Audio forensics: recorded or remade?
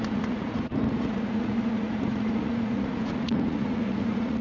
remade